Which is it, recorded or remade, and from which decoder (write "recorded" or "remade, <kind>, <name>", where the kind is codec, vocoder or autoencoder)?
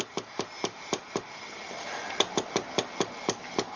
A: recorded